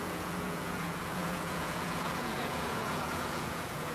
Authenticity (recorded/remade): remade